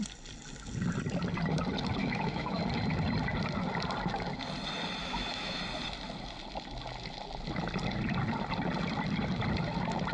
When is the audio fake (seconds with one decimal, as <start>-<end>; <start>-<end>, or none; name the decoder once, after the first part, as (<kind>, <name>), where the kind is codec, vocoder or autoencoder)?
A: 2.0-2.6 (autoencoder, DAC-VAE); 5.0-5.6